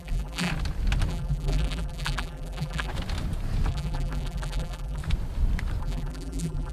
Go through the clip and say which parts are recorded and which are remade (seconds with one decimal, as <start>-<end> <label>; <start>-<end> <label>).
0.0-0.5 remade; 0.5-1.1 recorded; 1.1-2.9 remade; 2.9-3.7 recorded; 3.7-5.0 remade; 5.0-5.8 recorded; 5.8-6.7 remade